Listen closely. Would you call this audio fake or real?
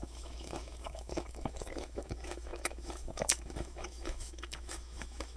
fake